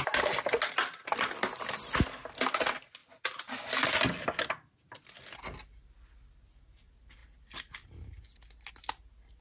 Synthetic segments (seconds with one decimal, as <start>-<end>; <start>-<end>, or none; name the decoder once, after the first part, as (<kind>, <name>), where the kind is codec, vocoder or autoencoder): none